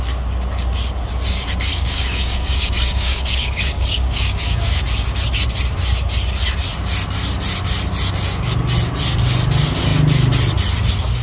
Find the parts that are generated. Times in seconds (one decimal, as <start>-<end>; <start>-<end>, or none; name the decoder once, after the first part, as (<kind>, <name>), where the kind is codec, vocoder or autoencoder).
1.7-4.8 (codec, DAC)